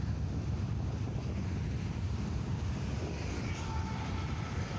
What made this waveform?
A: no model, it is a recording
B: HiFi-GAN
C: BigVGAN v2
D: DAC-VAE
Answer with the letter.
A